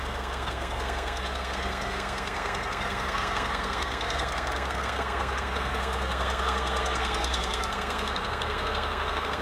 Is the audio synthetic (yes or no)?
yes